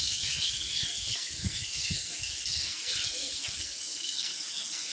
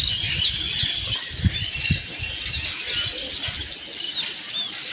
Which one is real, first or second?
second